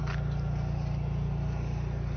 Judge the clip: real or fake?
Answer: real